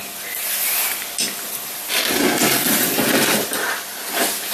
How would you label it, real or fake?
real